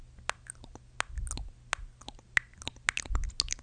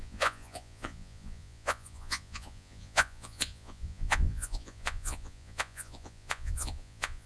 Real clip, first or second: first